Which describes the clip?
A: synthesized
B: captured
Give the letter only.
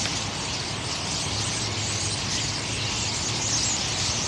B